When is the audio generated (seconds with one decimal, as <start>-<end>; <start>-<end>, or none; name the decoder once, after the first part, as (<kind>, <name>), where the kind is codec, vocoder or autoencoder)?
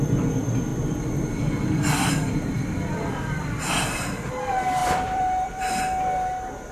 0.7-4.3 (vocoder, BigVGAN v2); 4.8-5.7